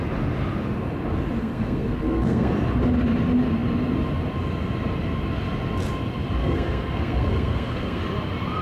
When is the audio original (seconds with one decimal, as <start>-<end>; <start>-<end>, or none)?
0.0-1.4; 2.5-6.4; 8.0-8.6